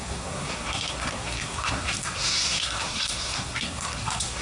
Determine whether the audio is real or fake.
fake